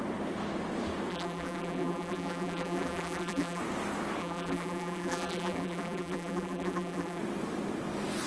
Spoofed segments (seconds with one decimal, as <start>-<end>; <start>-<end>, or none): 1.1-3.6; 4.2-7.2